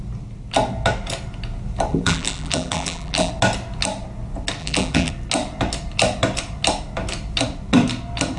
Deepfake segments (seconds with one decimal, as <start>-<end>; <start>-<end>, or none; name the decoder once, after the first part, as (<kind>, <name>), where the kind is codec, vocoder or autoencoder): 1.9-3.3 (vocoder, BigVGAN v2); 4.6-5.1